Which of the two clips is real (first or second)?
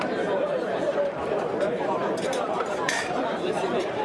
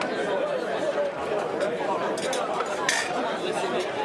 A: second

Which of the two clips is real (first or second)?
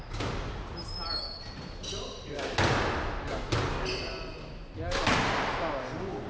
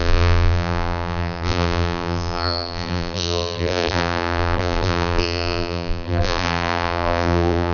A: first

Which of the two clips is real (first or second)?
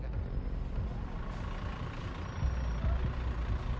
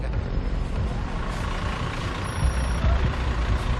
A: first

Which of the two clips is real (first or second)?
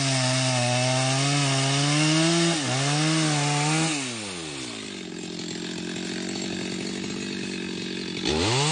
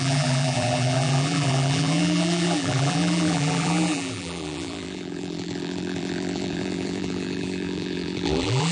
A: first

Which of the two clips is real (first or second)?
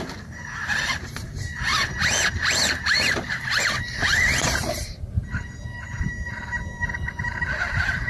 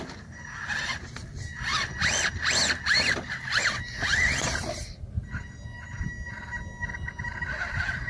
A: second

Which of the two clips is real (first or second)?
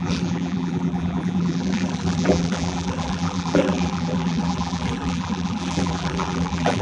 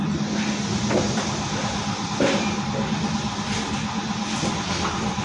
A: second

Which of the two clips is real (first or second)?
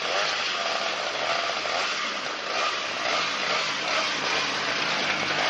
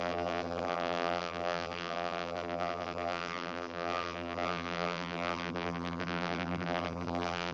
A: first